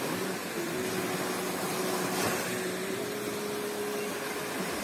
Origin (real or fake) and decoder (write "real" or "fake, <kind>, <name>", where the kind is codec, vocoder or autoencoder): real